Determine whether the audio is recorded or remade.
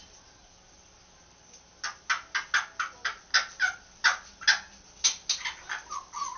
recorded